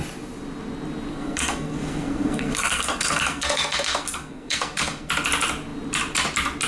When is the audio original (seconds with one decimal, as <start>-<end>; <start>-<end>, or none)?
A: 0.0-1.1; 5.1-6.7